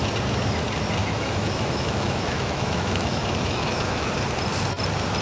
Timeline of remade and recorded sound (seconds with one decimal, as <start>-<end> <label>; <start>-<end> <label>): 0.0-1.0 recorded; 1.0-4.1 remade; 4.1-5.2 recorded